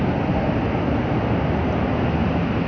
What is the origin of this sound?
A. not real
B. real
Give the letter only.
B